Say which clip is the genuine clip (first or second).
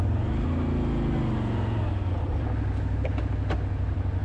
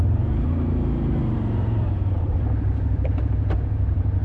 first